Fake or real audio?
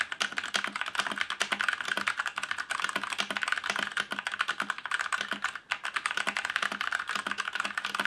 real